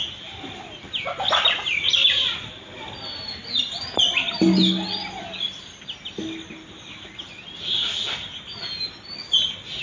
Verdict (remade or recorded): recorded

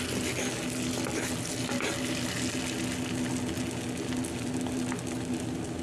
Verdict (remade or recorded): recorded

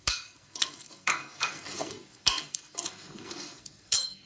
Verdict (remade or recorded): remade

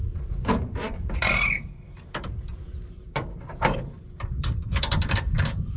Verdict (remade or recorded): remade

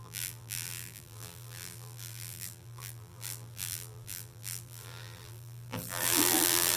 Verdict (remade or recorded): remade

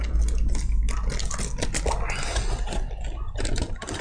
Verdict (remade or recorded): recorded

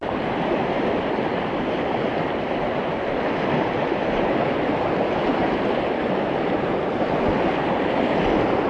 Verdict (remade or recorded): recorded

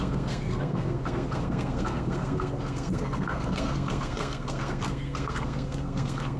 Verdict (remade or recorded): remade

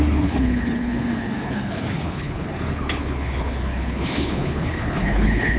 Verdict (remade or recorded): remade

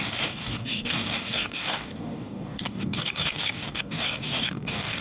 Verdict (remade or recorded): remade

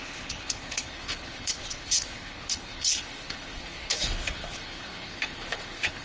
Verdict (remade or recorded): remade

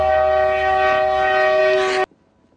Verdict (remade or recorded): recorded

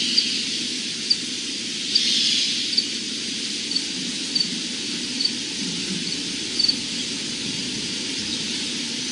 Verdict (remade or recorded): remade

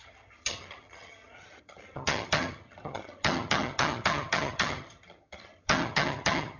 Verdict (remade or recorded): remade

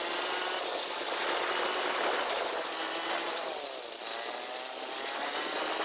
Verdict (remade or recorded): recorded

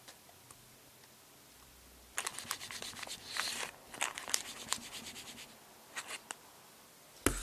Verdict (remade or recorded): recorded